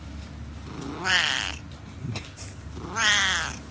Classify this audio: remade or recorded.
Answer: recorded